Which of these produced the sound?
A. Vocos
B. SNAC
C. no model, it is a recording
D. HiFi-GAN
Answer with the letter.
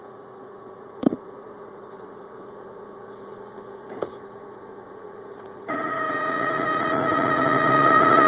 A